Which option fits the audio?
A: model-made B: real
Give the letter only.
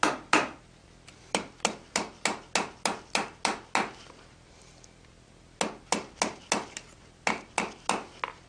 B